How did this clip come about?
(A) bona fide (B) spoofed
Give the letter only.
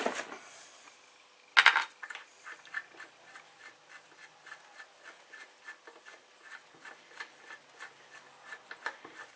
A